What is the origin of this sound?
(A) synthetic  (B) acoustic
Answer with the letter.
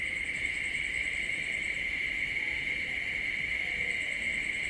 A